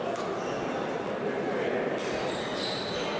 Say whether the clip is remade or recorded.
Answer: recorded